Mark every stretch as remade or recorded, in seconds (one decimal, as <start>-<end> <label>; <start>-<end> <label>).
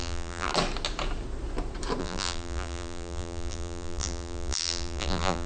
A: 0.0-0.5 remade; 0.5-2.0 recorded; 2.0-5.5 remade